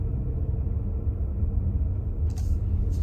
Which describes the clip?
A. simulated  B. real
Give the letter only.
B